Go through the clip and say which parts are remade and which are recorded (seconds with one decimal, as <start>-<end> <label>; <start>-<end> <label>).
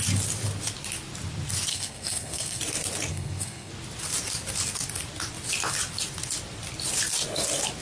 0.0-1.7 recorded; 1.7-2.6 remade; 2.6-3.1 recorded; 3.1-3.7 remade; 3.7-7.8 recorded